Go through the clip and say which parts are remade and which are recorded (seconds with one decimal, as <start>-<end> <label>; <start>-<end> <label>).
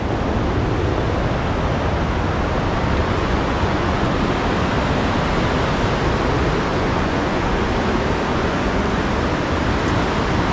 0.0-3.0 recorded; 3.0-4.1 remade; 4.1-6.7 recorded; 6.7-7.7 remade; 7.7-8.3 recorded; 8.3-9.0 remade; 9.0-10.5 recorded